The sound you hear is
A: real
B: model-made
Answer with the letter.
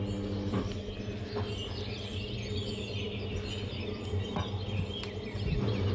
A